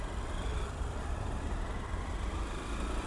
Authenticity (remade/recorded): recorded